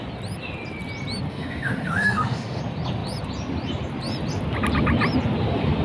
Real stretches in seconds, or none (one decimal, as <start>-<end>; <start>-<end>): 0.0-1.3; 2.6-5.8